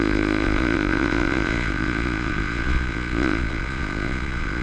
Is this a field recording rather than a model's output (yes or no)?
no